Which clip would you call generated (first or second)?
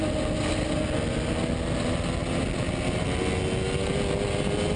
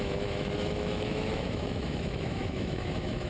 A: second